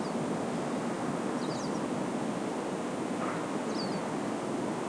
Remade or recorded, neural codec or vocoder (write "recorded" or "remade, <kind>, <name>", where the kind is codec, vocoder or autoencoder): recorded